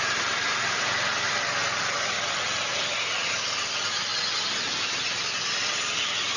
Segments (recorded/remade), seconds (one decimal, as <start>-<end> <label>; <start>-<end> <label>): 0.0-1.6 remade; 1.6-2.7 recorded; 2.7-4.1 remade; 4.1-6.0 recorded; 6.0-6.4 remade

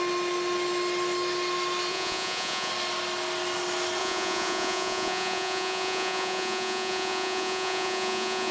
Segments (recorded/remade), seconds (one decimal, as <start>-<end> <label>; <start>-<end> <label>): 0.0-1.9 recorded; 1.9-2.7 remade; 2.7-4.0 recorded; 4.0-8.5 remade

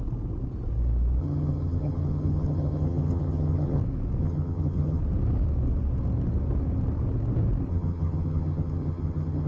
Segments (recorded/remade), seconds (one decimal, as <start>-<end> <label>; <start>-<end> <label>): 0.0-1.2 recorded; 1.2-3.8 remade; 3.8-4.2 recorded; 4.2-5.0 remade; 5.0-7.7 recorded; 7.7-9.5 remade

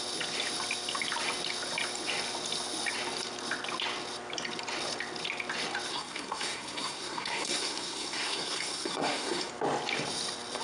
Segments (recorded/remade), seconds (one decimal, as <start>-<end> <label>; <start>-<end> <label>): 0.0-5.9 recorded; 5.9-9.5 remade; 9.5-10.6 recorded

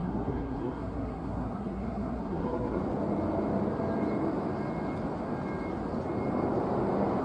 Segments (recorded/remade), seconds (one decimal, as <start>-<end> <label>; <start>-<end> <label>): 0.0-2.8 remade; 2.8-7.2 recorded